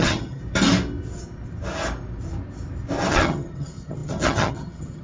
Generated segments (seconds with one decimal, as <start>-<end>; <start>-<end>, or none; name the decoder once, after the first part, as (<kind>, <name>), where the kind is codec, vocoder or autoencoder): 0.0-0.4 (vocoder, HiFi-GAN); 3.1-5.0

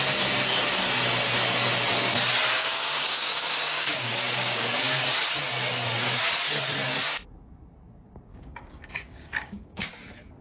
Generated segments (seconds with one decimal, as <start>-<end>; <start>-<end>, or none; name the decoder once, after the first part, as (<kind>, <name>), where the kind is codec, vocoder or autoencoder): 2.6-5.0 (codec, DAC); 8.3-9.9

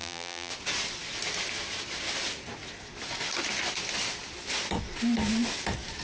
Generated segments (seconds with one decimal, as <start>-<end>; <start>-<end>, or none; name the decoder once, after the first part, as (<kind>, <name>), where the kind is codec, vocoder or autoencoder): 0.0-0.5 (vocoder, BigVGAN v2)

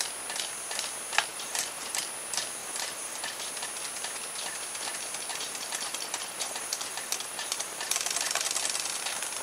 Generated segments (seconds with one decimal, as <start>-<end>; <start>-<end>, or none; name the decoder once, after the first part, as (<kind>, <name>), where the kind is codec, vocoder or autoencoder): 1.3-2.0 (vocoder, BigVGAN v2); 2.6-3.5; 5.3-8.6

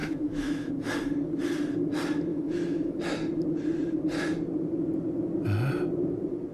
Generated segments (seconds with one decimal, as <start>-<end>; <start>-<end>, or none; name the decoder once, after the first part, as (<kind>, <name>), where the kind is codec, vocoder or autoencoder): 0.0-0.7 (autoencoder, DAC-VAE); 2.3-3.0

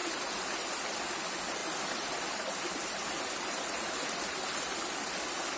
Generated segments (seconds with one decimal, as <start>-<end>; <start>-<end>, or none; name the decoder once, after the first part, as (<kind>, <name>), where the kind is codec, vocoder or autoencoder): none